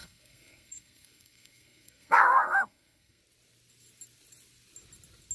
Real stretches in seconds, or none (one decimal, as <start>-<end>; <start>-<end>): 3.2-5.3